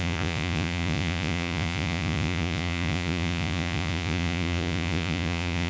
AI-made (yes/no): yes